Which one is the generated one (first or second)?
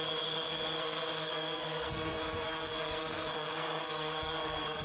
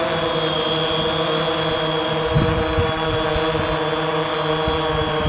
first